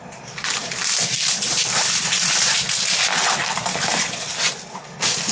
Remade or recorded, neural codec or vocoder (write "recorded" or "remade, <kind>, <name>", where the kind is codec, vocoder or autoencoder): recorded